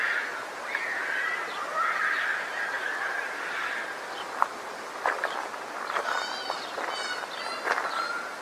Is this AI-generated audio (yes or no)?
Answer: no